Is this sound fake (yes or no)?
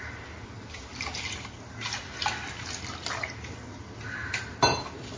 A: no